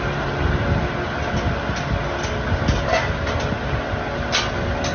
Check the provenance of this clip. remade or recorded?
recorded